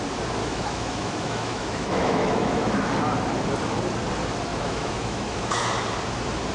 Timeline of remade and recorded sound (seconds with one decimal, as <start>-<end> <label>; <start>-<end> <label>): 0.0-0.4 recorded; 0.4-2.9 remade; 2.9-4.5 recorded; 4.5-5.6 remade; 5.6-6.5 recorded